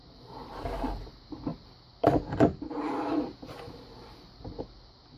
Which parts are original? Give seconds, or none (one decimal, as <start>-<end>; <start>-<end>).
0.0-1.5; 4.6-5.2